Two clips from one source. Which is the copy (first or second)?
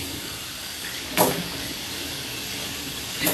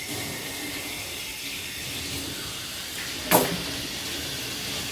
first